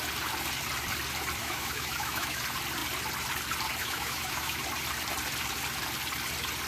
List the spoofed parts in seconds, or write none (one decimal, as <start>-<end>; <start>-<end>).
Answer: 1.4-2.4; 3.8-4.6